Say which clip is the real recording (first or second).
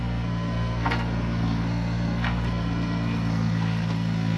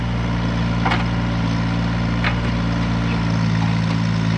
second